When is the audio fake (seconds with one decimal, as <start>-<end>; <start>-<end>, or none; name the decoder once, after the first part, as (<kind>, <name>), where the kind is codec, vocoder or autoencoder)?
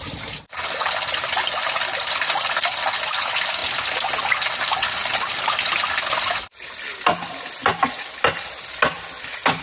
none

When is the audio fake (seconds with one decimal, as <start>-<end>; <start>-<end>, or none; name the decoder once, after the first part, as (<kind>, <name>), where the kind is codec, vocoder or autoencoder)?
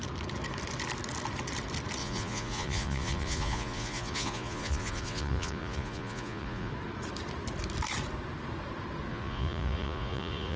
2.0-6.7 (vocoder, Vocos); 9.1-10.6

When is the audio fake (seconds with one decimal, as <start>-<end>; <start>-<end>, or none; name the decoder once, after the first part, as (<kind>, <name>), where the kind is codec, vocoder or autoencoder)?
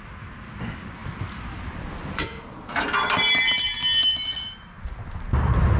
none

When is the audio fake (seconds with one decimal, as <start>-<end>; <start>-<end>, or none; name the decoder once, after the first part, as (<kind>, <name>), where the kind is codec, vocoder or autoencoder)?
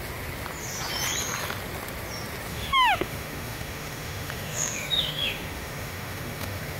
2.5-6.8 (autoencoder, DAC-VAE)